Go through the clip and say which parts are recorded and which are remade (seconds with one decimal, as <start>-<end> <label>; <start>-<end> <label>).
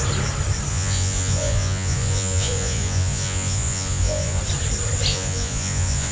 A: 0.0-0.7 recorded; 0.7-4.4 remade; 4.4-5.1 recorded; 5.1-6.1 remade